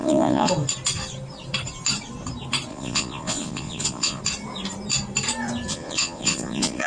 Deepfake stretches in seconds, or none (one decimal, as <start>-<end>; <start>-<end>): 0.0-0.5; 2.7-4.2; 5.7-6.9